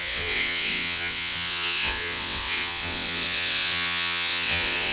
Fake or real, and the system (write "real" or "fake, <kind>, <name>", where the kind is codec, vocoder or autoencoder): fake, vocoder, WaveNeXt